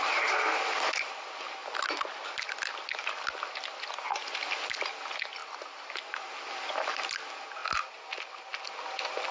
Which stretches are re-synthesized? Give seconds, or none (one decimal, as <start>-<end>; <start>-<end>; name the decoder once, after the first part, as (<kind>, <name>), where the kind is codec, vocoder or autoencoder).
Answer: none